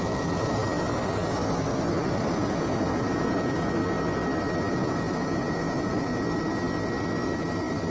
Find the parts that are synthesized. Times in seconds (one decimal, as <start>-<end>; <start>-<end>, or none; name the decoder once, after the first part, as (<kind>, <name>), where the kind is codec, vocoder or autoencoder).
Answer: 0.0-0.6 (vocoder, Vocos); 2.3-3.8; 4.7-6.1